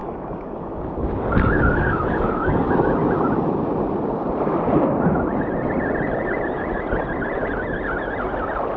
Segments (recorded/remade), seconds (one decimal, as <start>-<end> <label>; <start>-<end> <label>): 0.0-2.7 remade; 2.7-8.8 recorded